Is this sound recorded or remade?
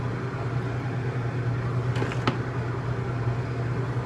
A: recorded